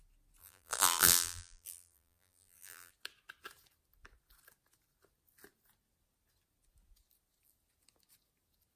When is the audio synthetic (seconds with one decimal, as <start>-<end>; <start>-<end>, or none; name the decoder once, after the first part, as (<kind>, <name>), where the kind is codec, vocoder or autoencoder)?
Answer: 0.4-2.9 (vocoder, BigVGAN v2)